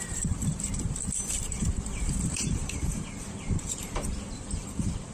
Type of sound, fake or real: fake